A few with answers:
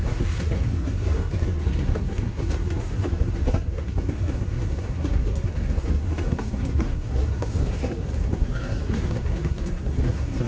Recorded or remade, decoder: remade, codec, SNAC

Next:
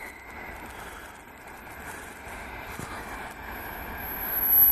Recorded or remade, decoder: recorded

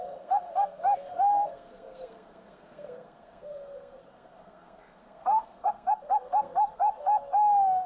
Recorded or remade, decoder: remade, codec, SNAC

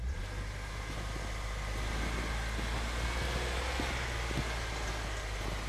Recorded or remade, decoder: recorded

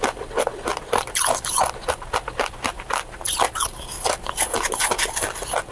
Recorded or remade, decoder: recorded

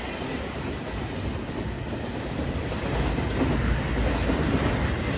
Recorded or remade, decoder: recorded